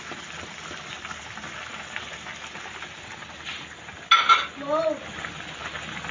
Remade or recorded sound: recorded